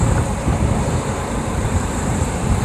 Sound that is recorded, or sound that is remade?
remade